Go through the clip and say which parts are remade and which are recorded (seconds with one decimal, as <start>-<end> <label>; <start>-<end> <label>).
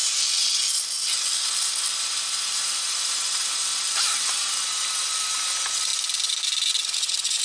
0.0-7.4 recorded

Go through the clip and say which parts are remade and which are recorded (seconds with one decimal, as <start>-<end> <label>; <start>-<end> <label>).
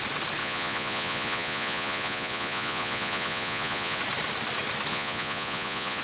0.0-0.4 recorded; 0.4-4.0 remade; 4.0-4.9 recorded; 4.9-6.0 remade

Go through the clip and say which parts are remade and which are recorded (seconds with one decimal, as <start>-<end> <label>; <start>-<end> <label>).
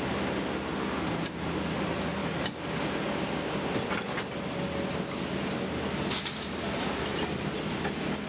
0.0-8.3 recorded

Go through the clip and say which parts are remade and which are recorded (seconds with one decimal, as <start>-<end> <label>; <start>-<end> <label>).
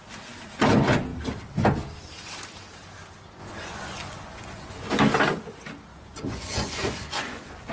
0.0-3.4 recorded; 3.4-5.0 remade; 5.0-5.9 recorded; 5.9-7.7 remade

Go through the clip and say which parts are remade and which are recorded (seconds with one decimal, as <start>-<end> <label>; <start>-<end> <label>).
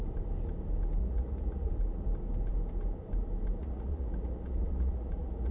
0.0-1.0 recorded; 1.0-1.7 remade; 1.7-3.6 recorded; 3.6-5.5 remade